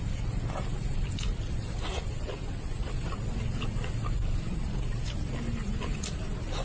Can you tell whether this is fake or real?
real